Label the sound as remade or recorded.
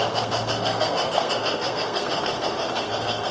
remade